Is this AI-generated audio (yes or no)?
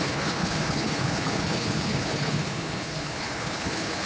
yes